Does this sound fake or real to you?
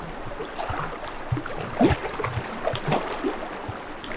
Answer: real